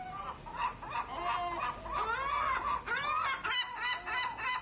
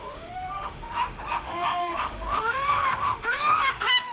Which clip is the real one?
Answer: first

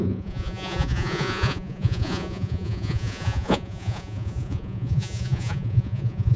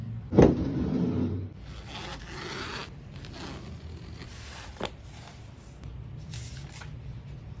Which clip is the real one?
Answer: second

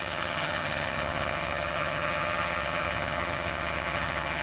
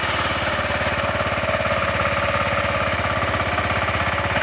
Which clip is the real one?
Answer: second